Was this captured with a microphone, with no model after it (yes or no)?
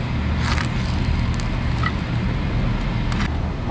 yes